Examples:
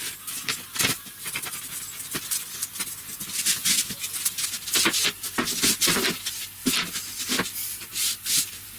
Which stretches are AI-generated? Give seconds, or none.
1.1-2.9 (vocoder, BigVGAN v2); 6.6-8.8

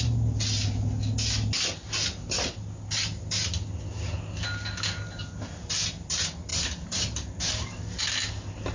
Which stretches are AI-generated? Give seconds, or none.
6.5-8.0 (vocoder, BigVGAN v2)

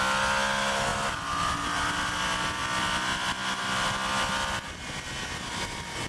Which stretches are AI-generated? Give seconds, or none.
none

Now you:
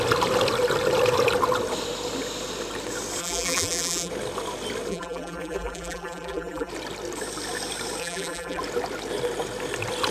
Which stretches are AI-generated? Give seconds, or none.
3.2-4.1 (vocoder, BigVGAN v2); 4.9-6.7; 8.0-8.6

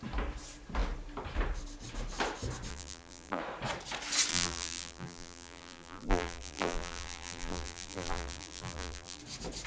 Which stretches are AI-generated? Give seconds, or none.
2.7-3.4 (vocoder, BigVGAN v2); 4.3-9.2

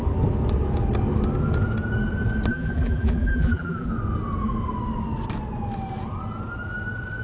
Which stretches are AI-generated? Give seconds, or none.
2.5-3.9 (vocoder, BigVGAN v2)